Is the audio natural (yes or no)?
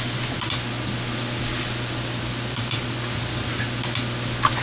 yes